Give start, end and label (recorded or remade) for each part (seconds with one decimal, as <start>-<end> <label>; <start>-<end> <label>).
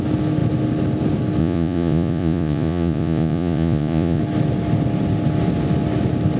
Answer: 0.0-1.4 recorded; 1.4-4.2 remade; 4.2-6.4 recorded